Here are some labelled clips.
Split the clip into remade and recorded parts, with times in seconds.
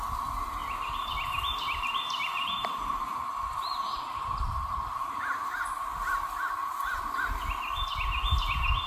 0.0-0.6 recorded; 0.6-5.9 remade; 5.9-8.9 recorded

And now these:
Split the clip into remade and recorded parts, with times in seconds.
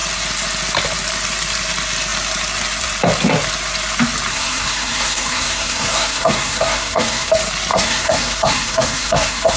0.0-4.3 recorded; 4.3-7.3 remade; 7.3-7.7 recorded; 7.7-9.6 remade